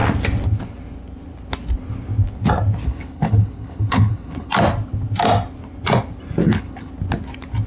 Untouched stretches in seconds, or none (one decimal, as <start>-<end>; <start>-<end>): 0.0-2.8; 4.5-6.4; 6.9-7.7